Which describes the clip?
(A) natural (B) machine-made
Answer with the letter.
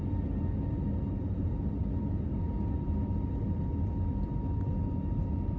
A